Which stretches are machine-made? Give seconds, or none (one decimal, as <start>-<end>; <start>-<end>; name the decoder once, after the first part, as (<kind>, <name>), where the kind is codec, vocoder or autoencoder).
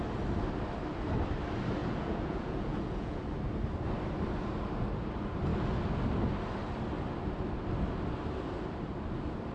1.8-3.2 (vocoder, Vocos)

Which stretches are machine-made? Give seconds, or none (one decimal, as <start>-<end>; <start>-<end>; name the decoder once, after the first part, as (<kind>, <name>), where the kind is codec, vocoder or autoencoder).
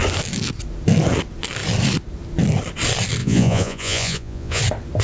3.2-4.6 (vocoder, Vocos)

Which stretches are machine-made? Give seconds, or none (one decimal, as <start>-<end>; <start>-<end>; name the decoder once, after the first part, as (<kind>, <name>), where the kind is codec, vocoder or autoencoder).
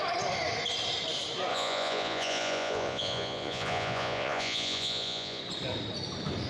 1.5-5.4 (vocoder, Vocos)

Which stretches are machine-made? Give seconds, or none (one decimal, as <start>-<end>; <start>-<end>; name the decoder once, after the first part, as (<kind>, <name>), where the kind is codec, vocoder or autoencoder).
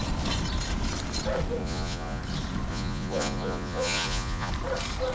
1.6-2.2 (vocoder, Vocos); 2.7-4.5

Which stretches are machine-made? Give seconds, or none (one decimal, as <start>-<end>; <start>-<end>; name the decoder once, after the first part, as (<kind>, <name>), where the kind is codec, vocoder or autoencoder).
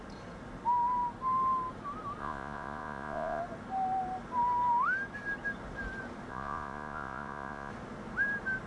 2.2-3.4 (vocoder, Vocos); 6.3-7.7